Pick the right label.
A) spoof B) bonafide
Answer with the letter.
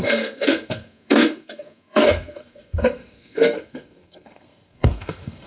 A